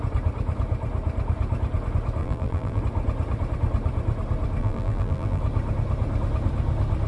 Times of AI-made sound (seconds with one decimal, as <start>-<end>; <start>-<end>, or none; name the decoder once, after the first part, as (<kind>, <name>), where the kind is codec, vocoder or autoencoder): 2.2-2.8 (vocoder, BigVGAN v2); 4.6-5.4